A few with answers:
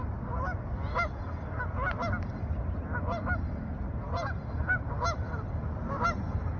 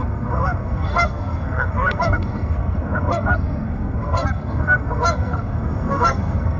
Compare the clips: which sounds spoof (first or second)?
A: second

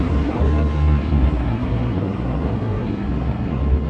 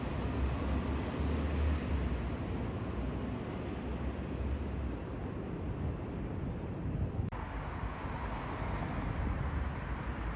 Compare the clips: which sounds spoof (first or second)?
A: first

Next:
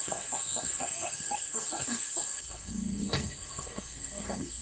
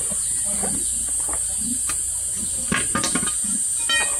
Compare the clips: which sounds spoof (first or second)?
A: first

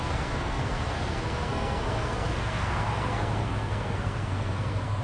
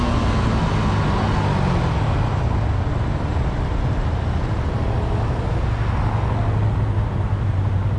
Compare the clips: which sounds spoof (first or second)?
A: first